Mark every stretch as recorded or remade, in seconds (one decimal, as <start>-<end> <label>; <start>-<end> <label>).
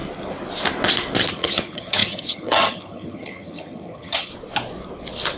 0.0-1.3 recorded; 1.3-4.3 remade; 4.3-5.4 recorded